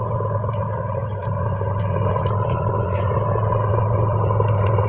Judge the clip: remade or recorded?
recorded